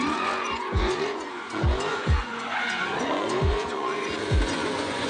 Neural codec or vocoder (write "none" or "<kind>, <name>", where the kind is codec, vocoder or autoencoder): vocoder, Vocos